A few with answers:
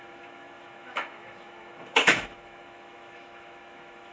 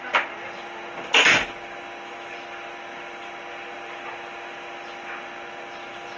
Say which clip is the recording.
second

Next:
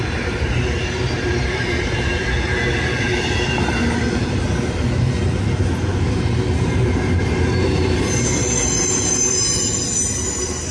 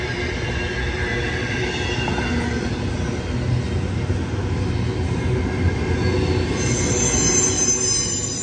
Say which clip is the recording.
second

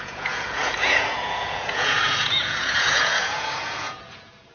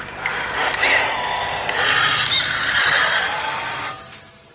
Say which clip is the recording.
second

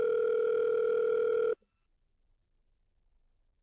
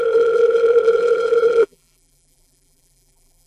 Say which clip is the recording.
first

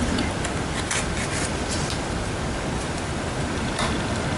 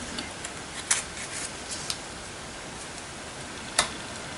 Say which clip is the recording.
second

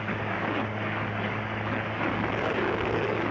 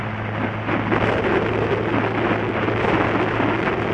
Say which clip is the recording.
second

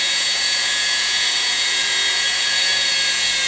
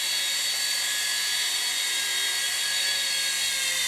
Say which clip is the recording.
second